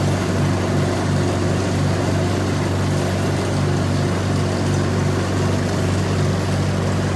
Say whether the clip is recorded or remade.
recorded